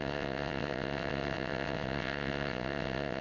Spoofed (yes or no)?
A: yes